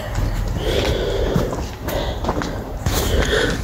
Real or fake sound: real